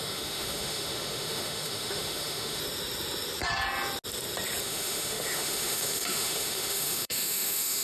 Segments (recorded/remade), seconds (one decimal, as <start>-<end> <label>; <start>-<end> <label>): 0.0-2.6 remade; 2.6-4.6 recorded; 4.6-7.8 remade